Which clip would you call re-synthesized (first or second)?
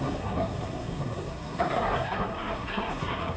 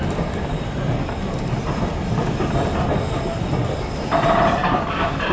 first